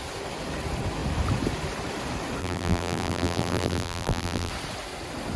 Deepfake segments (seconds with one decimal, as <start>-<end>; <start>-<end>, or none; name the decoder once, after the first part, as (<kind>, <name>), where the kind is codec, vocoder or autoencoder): 2.4-4.5 (vocoder, BigVGAN v2)